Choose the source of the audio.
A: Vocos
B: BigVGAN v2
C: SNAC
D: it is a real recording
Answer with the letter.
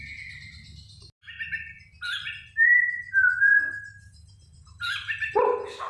D